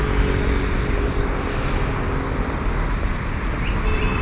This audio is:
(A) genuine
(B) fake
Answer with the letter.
A